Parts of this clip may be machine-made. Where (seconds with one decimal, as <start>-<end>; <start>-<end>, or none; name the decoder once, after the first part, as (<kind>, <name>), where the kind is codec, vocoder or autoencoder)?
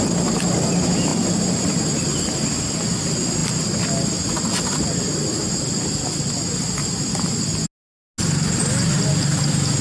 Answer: none